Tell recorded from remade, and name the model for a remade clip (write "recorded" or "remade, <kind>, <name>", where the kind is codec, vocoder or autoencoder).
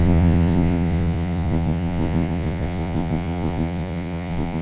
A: remade, vocoder, Vocos